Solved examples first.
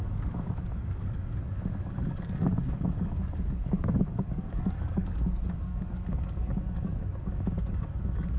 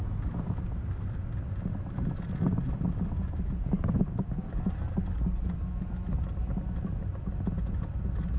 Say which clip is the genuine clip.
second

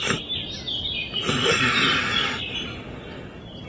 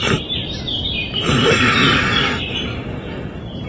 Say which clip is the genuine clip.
first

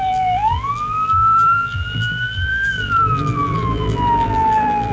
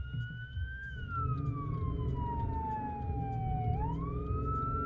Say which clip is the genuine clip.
second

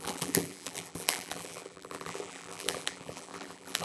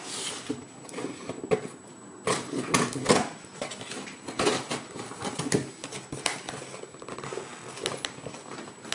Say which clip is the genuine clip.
second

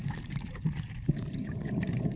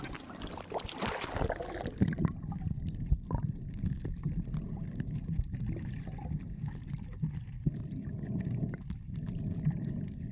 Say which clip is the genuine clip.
second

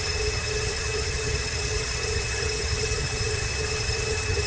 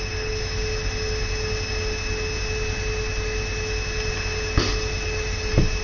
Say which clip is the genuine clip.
second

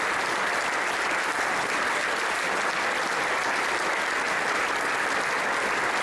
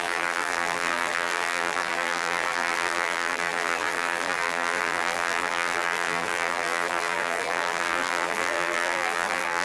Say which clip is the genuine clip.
first